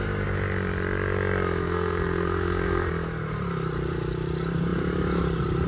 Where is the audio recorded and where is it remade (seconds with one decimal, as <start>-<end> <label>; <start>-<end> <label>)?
0.0-1.6 recorded; 1.6-2.9 remade; 2.9-5.7 recorded